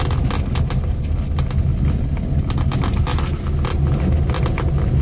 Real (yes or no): yes